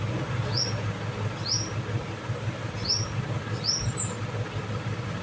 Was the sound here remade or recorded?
recorded